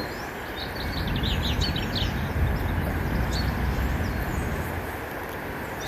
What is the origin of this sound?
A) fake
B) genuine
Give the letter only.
B